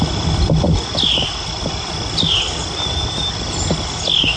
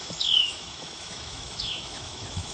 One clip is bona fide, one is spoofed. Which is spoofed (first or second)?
second